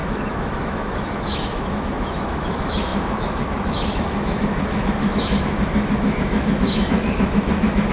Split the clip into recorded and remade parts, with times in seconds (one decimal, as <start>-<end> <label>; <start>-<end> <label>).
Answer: 0.0-7.9 remade